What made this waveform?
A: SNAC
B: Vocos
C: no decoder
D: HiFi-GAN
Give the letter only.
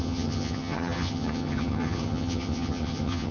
D